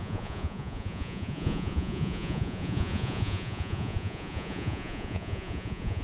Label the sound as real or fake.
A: fake